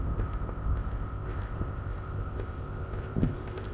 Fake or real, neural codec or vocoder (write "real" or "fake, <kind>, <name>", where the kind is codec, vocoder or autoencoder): fake, codec, ZipCodec